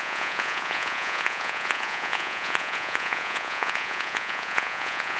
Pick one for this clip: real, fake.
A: fake